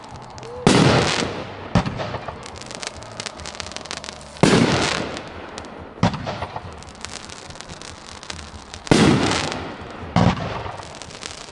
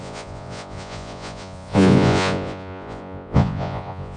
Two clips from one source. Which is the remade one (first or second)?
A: second